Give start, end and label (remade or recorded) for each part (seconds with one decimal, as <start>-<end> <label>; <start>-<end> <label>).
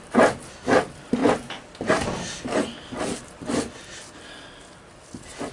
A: 0.0-5.5 recorded